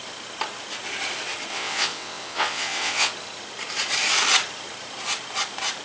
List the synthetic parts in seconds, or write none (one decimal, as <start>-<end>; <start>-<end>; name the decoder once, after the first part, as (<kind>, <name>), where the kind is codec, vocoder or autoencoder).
1.5-3.1 (vocoder, WaveNeXt)